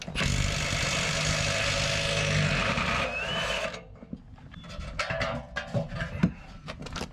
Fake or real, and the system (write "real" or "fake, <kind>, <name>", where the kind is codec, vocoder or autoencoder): real